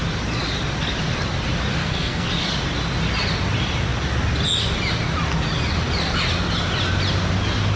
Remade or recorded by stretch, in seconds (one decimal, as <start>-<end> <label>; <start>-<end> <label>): 0.0-1.8 recorded; 1.8-2.3 remade; 2.3-7.8 recorded